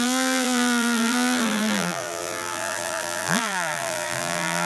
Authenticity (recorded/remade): remade